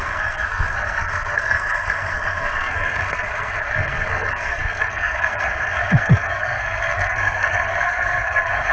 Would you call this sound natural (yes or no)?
no